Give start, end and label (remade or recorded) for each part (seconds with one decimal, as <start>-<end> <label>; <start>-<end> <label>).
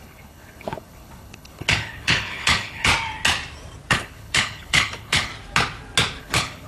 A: 0.0-2.9 remade; 2.9-3.9 recorded; 3.9-5.3 remade; 5.3-6.2 recorded; 6.2-6.7 remade